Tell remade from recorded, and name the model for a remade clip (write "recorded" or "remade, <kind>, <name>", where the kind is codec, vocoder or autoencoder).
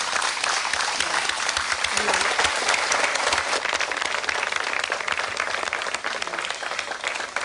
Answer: recorded